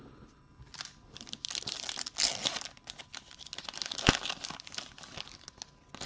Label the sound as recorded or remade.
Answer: recorded